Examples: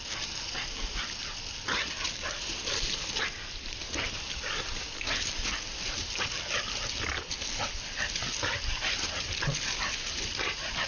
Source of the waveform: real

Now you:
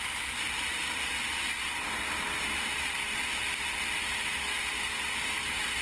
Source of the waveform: real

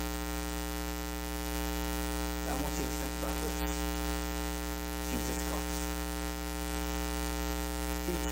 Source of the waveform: fake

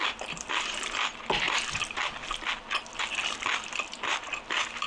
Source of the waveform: real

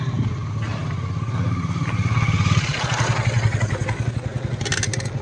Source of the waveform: real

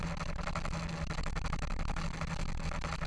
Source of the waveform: real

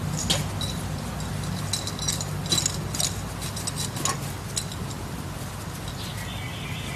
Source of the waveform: real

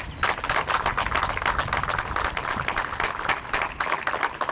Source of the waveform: real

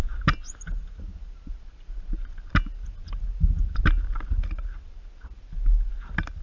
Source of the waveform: real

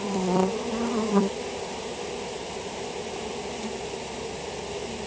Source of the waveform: fake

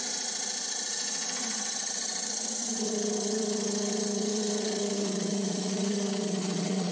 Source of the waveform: fake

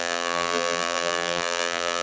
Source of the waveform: fake